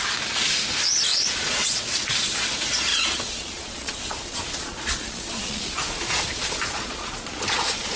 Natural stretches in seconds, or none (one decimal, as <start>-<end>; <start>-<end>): 0.0-1.1; 1.9-2.9